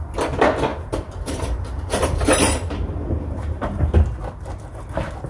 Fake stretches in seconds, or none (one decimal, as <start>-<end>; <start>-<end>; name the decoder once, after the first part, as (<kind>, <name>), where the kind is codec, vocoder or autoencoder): 0.7-3.9 (vocoder, BigVGAN v2)